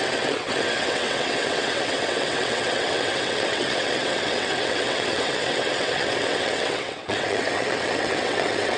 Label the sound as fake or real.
fake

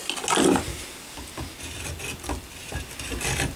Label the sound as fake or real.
real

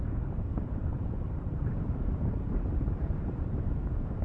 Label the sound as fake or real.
fake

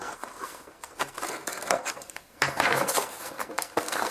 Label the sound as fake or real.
fake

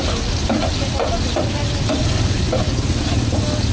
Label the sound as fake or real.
fake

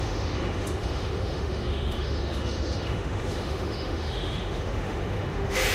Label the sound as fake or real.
fake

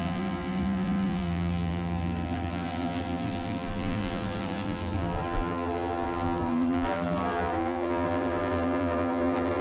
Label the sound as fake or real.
fake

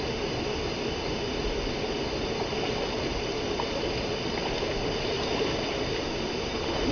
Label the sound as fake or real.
real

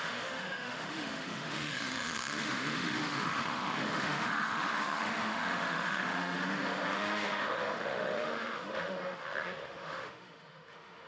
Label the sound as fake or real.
fake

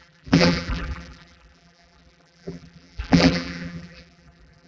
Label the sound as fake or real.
fake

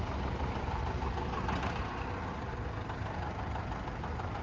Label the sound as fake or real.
fake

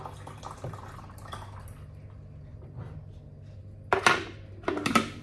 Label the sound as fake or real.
real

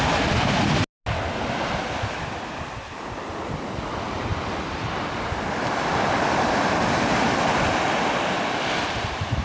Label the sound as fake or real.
real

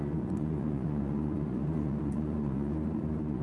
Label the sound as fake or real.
fake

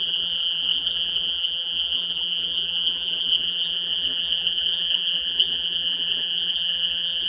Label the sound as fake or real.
fake